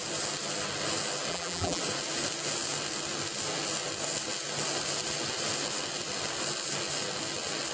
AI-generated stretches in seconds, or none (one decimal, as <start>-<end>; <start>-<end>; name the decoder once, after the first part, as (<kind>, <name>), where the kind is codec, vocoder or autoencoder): 1.3-1.8 (vocoder, BigVGAN v2)